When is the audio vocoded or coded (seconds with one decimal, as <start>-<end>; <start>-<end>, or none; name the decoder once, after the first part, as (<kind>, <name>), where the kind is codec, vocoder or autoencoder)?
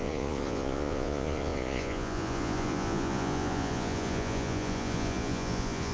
0.0-5.9 (vocoder, Vocos)